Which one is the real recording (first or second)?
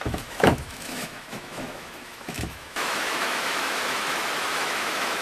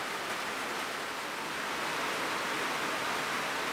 second